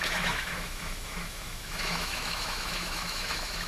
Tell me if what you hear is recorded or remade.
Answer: remade